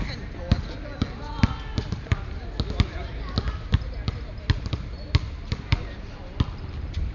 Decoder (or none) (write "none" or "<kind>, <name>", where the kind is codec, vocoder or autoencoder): none